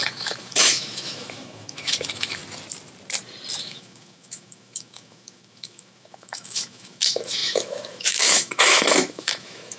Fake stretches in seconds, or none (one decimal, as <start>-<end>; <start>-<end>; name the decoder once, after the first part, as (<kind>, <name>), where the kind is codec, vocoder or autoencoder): 0.0-2.4 (autoencoder, DAC-VAE); 3.6-9.8